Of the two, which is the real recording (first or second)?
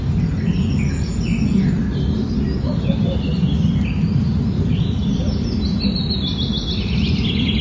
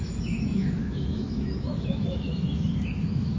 first